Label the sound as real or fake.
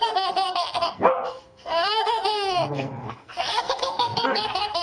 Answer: fake